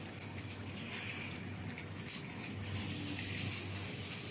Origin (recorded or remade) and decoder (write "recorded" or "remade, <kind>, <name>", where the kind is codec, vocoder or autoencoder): recorded